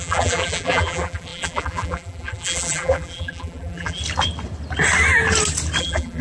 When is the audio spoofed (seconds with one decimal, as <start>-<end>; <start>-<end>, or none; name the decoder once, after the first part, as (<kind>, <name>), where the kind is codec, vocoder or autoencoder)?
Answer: 0.0-4.0 (vocoder, BigVGAN v2); 5.8-6.2